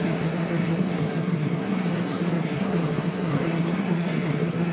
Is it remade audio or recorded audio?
remade